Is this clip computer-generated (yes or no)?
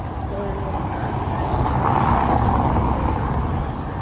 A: no